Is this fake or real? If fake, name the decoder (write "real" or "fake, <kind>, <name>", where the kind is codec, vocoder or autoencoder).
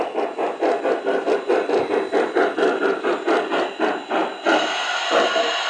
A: real